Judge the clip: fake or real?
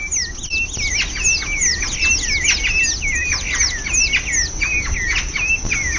real